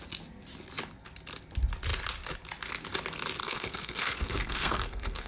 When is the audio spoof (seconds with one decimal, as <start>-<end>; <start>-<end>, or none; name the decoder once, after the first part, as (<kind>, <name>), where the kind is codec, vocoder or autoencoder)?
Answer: 3.4-5.3 (codec, SNAC)